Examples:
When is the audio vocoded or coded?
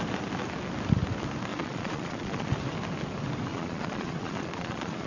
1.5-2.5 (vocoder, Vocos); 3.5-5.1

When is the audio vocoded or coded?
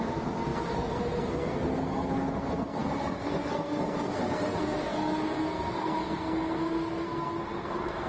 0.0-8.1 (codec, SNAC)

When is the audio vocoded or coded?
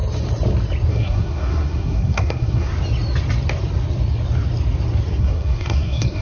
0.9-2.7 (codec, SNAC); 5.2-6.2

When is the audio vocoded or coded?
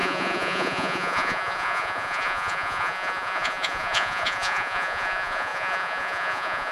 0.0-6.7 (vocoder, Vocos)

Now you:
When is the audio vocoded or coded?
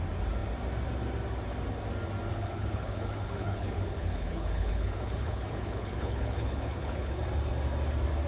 2.3-7.2 (codec, HILCodec)